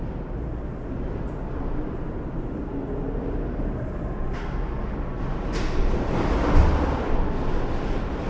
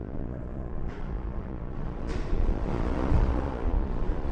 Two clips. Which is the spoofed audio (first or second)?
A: second